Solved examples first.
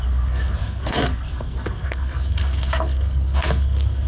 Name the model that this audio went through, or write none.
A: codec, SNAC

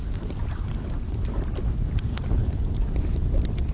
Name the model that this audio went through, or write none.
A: none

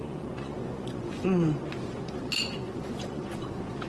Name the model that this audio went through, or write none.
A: vocoder, Vocos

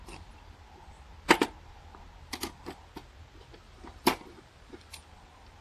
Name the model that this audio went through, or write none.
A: none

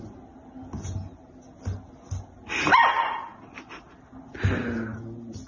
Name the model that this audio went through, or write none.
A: none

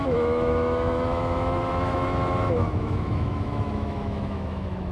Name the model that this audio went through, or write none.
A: autoencoder, DAC-VAE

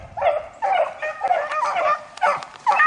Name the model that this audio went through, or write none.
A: vocoder, BigVGAN v2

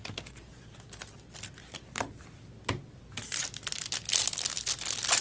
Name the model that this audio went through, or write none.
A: none